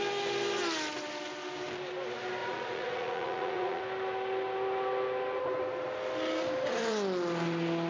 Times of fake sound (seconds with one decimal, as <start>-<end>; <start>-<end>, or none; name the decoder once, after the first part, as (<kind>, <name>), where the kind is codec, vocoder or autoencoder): 2.4-3.8 (vocoder, Vocos)

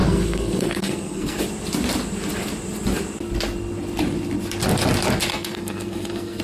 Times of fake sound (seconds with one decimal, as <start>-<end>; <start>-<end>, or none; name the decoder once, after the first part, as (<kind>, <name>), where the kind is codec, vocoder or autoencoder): 0.0-1.4 (codec, SNAC); 5.3-6.4

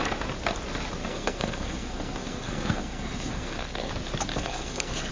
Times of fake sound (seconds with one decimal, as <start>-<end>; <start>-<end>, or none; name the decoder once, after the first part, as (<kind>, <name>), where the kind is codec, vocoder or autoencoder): 1.0-3.9 (codec, SNAC); 4.3-5.1

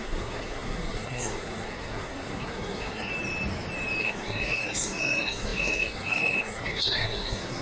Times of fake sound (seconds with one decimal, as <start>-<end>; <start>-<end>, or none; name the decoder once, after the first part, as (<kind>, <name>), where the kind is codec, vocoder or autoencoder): 0.0-3.1 (codec, SNAC); 4.0-7.6

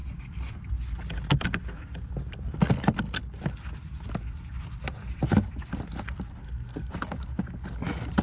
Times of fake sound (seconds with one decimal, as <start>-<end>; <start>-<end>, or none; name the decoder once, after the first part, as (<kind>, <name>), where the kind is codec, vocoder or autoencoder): 6.4-6.9 (codec, SNAC)